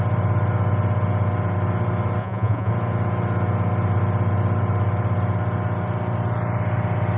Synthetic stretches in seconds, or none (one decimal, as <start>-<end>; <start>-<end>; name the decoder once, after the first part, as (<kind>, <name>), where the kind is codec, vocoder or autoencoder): 2.2-2.7 (vocoder, Vocos)